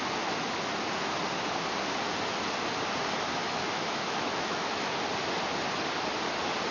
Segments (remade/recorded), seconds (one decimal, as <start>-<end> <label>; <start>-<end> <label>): 0.0-3.4 recorded; 3.4-4.9 remade; 4.9-6.7 recorded